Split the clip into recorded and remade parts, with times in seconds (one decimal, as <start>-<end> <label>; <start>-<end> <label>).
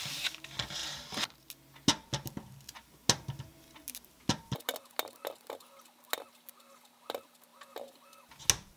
0.0-0.8 recorded; 0.8-1.4 remade; 1.4-8.8 recorded